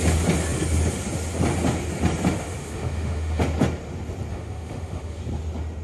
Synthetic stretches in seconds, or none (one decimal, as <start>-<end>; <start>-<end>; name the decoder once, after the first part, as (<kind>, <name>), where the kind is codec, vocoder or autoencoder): 2.4-3.4 (autoencoder, DAC-VAE); 4.3-5.2